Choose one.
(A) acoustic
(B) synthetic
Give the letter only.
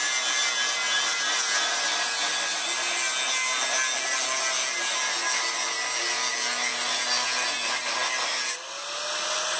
A